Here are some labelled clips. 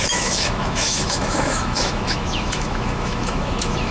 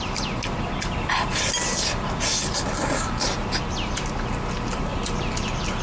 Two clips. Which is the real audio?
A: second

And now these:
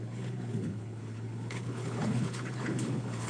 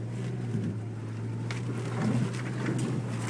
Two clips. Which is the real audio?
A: second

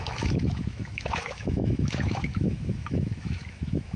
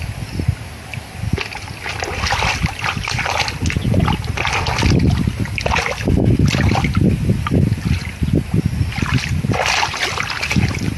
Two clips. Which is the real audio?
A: second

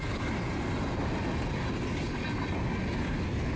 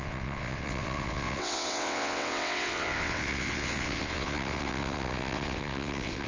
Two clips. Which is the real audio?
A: first